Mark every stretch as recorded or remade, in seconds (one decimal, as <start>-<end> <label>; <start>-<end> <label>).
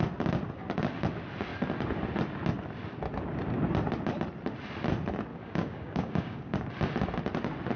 0.0-5.3 recorded; 5.3-6.7 remade; 6.7-7.8 recorded